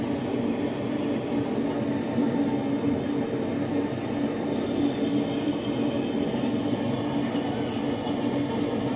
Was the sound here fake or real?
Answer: real